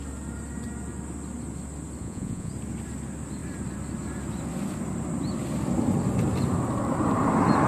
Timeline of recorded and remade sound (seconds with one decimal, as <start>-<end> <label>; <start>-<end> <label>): 0.0-2.0 recorded; 2.0-2.5 remade; 2.5-7.7 recorded